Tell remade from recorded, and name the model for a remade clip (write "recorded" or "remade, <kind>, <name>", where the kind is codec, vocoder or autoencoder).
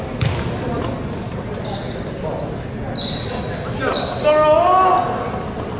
recorded